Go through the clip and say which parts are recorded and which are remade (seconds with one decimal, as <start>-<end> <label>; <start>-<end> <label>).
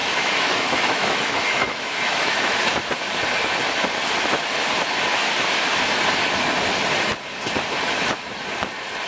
0.0-2.8 remade; 2.8-9.1 recorded